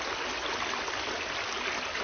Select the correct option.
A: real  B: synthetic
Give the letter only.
A